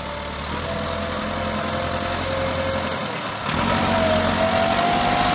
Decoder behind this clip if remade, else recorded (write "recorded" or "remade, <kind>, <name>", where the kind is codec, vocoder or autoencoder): recorded